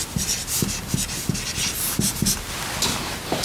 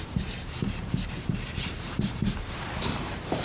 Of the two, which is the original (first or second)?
first